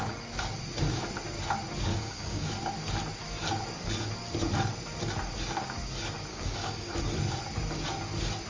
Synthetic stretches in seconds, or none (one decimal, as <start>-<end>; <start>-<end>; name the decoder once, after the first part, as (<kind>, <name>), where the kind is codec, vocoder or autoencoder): 1.9-2.5 (codec, DAC); 6.3-6.9